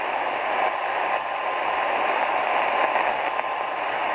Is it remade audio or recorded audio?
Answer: recorded